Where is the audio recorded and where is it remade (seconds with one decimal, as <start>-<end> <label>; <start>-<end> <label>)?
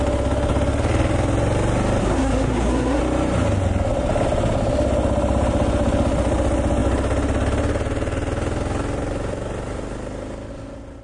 0.0-2.0 recorded; 2.0-3.0 remade; 3.0-11.0 recorded